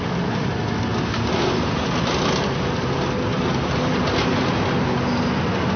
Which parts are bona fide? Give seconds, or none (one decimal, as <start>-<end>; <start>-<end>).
0.0-3.3; 4.3-5.8